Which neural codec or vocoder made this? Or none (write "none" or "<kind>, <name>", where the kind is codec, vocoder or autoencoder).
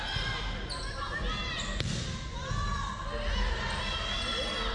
none